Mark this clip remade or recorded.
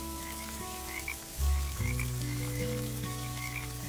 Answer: remade